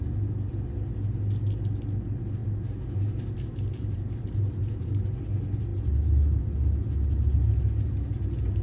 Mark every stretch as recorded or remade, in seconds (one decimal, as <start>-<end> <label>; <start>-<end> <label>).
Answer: 0.0-2.4 recorded; 2.4-5.0 remade; 5.0-8.6 recorded